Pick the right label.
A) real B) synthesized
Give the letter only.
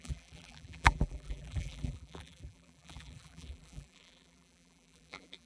B